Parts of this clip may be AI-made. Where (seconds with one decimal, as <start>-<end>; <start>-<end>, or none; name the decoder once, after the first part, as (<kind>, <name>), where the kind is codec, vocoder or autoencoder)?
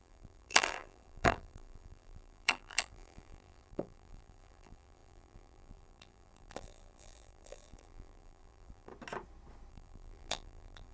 0.0-8.9 (vocoder, BigVGAN v2); 9.7-10.9